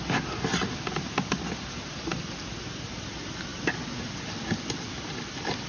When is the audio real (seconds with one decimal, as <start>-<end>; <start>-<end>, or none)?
0.0-5.7